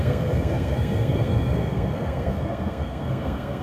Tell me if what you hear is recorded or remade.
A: remade